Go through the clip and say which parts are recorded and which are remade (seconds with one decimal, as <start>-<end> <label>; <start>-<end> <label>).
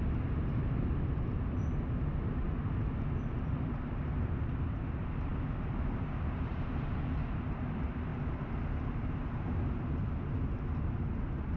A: 0.0-11.6 recorded